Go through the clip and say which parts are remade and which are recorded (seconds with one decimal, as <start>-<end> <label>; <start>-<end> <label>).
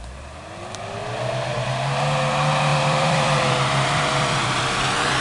0.0-2.7 recorded; 2.7-5.2 remade